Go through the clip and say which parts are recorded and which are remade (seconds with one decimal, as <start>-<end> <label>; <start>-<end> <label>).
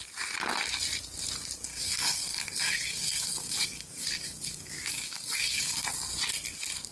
0.0-1.7 recorded; 1.7-5.8 remade; 5.8-6.9 recorded